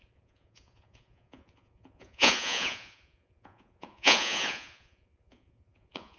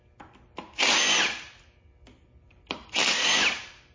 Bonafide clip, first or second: second